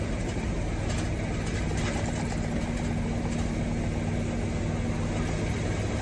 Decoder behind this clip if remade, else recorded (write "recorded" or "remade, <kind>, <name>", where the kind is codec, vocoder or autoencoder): recorded